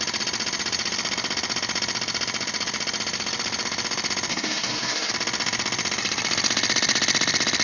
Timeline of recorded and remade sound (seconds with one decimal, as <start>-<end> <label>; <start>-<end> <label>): 0.0-4.3 recorded; 4.3-5.1 remade; 5.1-7.6 recorded